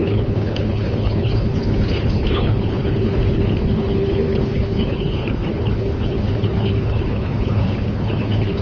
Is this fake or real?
fake